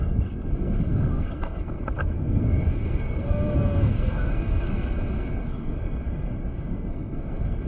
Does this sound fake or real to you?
fake